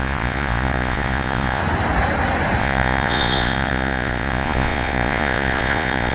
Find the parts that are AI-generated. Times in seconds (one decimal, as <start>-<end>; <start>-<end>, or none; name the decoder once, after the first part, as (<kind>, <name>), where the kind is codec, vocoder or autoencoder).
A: 0.0-1.6 (vocoder, Vocos); 2.6-6.1